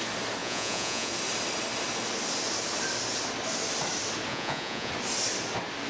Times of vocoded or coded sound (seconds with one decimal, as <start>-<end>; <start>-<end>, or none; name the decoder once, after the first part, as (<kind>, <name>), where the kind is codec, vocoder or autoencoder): 0.4-1.1 (vocoder, Vocos); 4.3-4.9